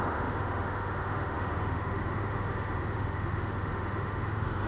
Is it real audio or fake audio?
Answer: fake